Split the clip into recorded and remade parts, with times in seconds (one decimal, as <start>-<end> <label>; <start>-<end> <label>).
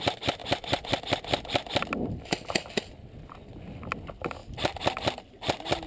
0.0-5.9 recorded